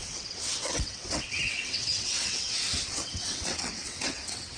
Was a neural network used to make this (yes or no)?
yes